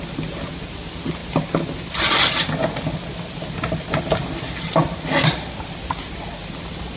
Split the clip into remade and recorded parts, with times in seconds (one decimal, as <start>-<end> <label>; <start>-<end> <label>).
0.0-7.0 recorded

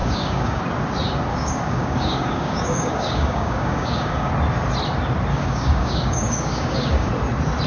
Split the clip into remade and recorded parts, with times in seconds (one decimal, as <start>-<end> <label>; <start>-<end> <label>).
0.0-0.6 remade; 0.6-1.3 recorded; 1.3-4.3 remade; 4.3-5.3 recorded; 5.3-7.1 remade; 7.1-7.7 recorded

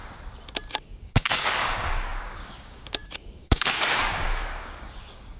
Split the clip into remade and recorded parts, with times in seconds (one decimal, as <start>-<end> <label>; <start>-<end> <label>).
0.0-0.7 recorded; 0.7-5.4 remade

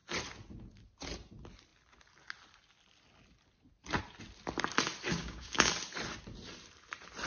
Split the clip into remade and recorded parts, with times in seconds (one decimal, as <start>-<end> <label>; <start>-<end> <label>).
0.0-5.1 recorded; 5.1-5.7 remade; 5.7-7.3 recorded

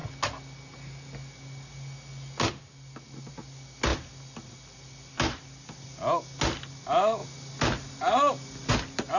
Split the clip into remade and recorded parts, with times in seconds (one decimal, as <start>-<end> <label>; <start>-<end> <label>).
0.0-9.2 recorded